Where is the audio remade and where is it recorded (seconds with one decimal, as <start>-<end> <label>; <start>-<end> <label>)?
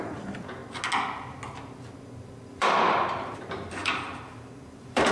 0.0-0.6 remade; 0.6-2.6 recorded; 2.6-5.1 remade